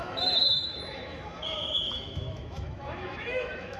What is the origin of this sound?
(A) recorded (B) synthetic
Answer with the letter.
B